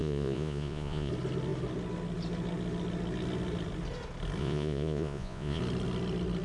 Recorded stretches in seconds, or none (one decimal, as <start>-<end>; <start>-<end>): 1.1-4.4; 5.6-6.4